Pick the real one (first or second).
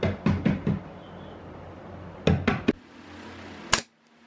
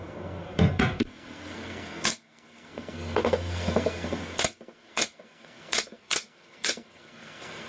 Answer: first